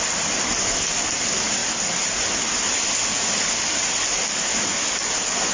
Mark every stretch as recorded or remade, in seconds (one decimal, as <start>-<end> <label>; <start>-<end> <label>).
0.0-5.5 recorded

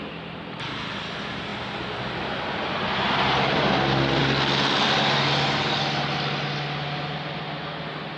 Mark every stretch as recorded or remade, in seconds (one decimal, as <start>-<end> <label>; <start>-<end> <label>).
0.0-8.2 recorded

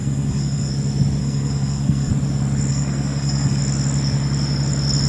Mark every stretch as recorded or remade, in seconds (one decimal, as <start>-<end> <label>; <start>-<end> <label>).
0.0-0.7 remade; 0.7-1.2 recorded; 1.2-2.1 remade; 2.1-2.7 recorded; 2.7-3.6 remade; 3.6-5.1 recorded

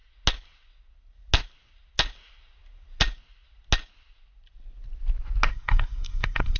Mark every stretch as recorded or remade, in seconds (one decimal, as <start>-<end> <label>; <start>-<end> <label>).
0.0-5.5 recorded; 5.5-6.6 remade

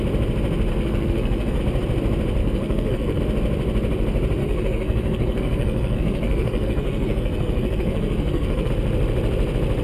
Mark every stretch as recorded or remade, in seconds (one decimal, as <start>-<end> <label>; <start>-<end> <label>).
0.0-0.7 recorded; 0.7-1.6 remade; 1.6-2.4 recorded; 2.4-3.2 remade; 3.2-4.4 recorded; 4.4-8.7 remade; 8.7-9.8 recorded

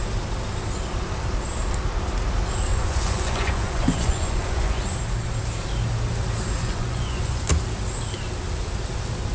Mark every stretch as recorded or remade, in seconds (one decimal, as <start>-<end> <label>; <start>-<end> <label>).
0.0-2.7 recorded; 2.7-4.8 remade; 4.8-6.6 recorded; 6.6-7.5 remade; 7.5-9.3 recorded

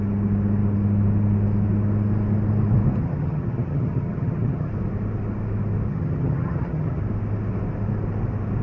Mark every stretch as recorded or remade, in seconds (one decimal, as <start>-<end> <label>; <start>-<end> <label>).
0.0-3.0 recorded; 3.0-4.7 remade; 4.7-5.9 recorded; 5.9-7.0 remade; 7.0-8.6 recorded